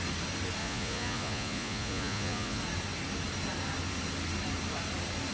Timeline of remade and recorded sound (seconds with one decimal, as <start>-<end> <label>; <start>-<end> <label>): 0.0-0.6 recorded; 0.6-2.6 remade; 2.6-5.3 recorded